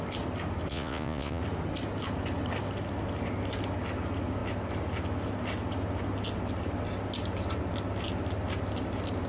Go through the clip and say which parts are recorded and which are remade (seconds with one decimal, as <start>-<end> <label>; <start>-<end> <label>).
0.0-0.7 recorded; 0.7-1.4 remade; 1.4-9.3 recorded